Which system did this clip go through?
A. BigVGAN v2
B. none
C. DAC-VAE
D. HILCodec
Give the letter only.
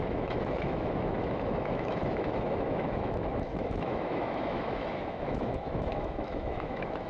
C